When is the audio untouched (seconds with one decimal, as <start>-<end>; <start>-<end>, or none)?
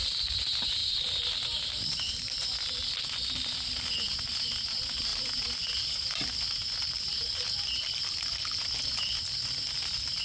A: 0.0-10.2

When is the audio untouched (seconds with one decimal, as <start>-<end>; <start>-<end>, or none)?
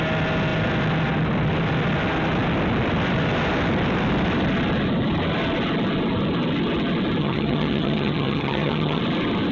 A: 0.0-7.2; 9.0-9.5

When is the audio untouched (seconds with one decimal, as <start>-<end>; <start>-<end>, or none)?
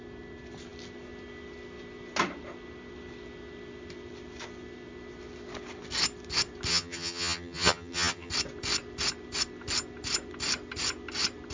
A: 0.0-6.7; 8.3-11.5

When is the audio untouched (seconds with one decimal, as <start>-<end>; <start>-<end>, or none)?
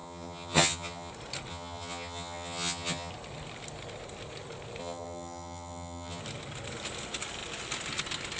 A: 1.1-1.5; 3.1-4.8; 6.2-8.4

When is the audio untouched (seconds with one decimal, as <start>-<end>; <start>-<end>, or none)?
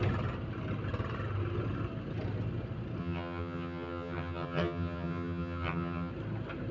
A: 0.0-3.0; 6.1-6.7